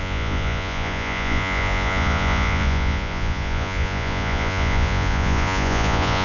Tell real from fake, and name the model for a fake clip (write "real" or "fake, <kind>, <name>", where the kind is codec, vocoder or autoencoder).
fake, vocoder, Vocos